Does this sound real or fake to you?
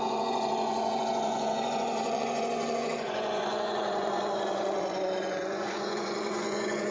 fake